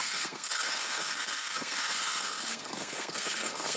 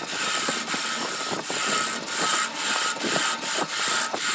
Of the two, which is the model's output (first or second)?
first